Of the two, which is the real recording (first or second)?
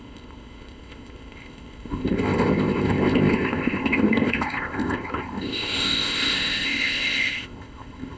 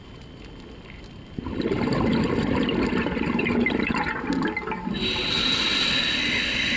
second